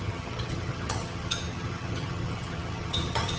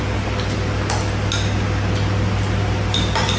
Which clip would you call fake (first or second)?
first